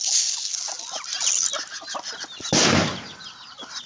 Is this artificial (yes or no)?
no